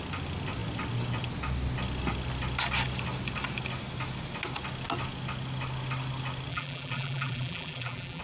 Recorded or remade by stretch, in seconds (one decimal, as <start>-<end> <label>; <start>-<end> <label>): 0.0-6.5 recorded; 6.5-8.2 remade